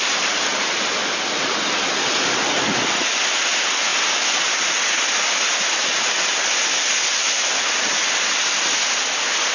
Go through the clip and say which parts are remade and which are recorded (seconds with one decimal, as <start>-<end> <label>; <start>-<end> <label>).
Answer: 0.0-9.5 recorded